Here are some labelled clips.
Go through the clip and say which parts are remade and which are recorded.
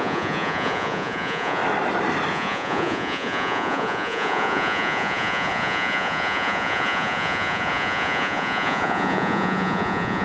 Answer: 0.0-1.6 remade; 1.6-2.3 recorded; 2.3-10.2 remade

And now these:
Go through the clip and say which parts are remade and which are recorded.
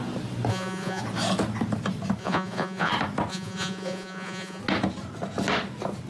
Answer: 0.0-0.5 recorded; 0.5-1.0 remade; 1.0-2.2 recorded; 2.2-2.9 remade; 2.9-3.3 recorded; 3.3-4.6 remade; 4.6-6.1 recorded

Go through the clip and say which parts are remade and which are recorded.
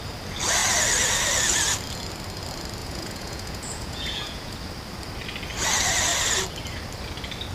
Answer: 0.0-2.8 recorded; 2.8-4.5 remade; 4.5-7.5 recorded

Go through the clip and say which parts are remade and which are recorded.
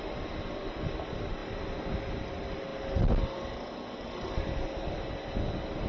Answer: 0.0-5.9 recorded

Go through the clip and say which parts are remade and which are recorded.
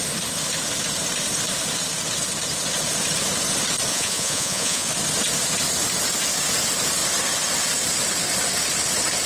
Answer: 0.0-3.9 recorded; 3.9-4.9 remade; 4.9-9.3 recorded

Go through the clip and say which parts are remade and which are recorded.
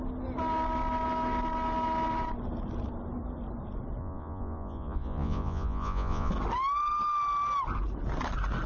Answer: 0.0-4.0 recorded; 4.0-6.3 remade; 6.3-8.7 recorded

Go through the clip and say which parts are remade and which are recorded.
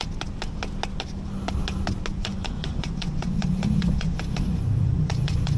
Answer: 0.0-2.1 recorded; 2.1-5.6 remade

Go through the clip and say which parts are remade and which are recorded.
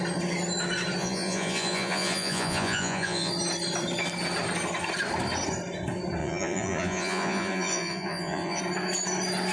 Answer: 0.0-1.0 recorded; 1.0-3.3 remade; 3.3-6.2 recorded; 6.2-8.6 remade; 8.6-9.5 recorded